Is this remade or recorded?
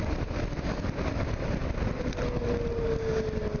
recorded